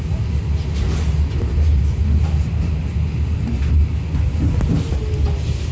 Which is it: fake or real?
real